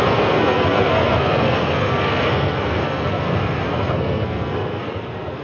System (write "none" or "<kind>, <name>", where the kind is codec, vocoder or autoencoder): codec, SNAC